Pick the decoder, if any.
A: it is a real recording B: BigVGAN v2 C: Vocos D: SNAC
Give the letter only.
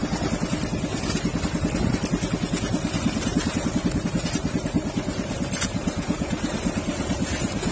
A